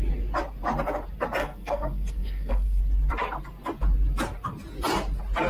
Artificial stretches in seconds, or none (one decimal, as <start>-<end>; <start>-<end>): 1.4-2.8